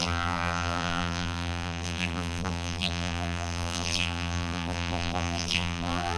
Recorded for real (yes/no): no